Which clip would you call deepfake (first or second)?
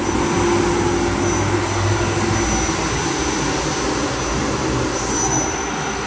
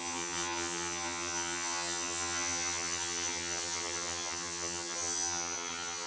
second